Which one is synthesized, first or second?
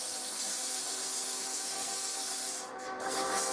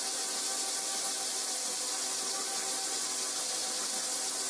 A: first